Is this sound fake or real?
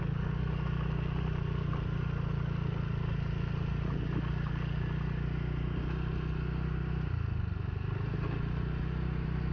real